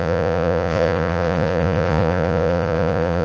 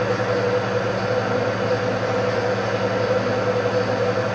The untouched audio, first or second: second